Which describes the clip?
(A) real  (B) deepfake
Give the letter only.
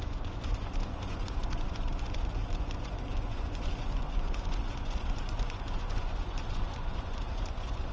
B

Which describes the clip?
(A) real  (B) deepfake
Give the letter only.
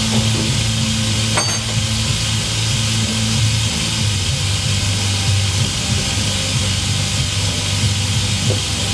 A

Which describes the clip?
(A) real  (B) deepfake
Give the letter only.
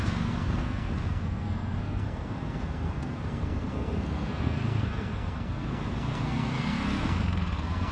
B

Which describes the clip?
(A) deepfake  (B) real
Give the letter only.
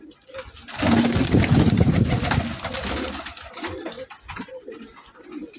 B